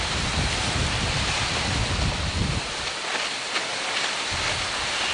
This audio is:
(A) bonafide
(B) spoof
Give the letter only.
A